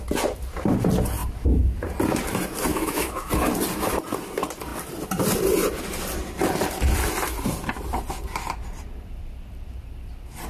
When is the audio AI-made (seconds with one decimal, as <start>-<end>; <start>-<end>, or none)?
2.7-3.3